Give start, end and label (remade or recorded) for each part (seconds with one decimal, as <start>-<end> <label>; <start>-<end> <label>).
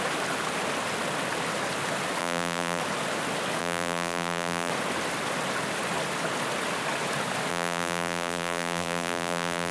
0.0-2.2 recorded; 2.2-2.8 remade; 2.8-3.6 recorded; 3.6-4.7 remade; 4.7-7.5 recorded; 7.5-9.7 remade